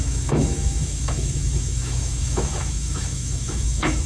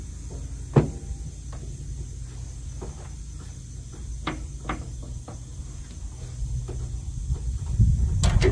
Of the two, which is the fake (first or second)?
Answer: first